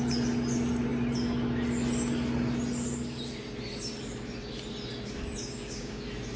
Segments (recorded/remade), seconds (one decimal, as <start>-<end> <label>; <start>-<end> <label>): 0.0-5.4 recorded; 5.4-6.0 remade; 6.0-6.4 recorded